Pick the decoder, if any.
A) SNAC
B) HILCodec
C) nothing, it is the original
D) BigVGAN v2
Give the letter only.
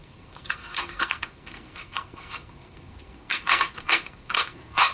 A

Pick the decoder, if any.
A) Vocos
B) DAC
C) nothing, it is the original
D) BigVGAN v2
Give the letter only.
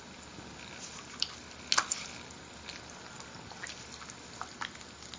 C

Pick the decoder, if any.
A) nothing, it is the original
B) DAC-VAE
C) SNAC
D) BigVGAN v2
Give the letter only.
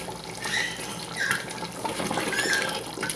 A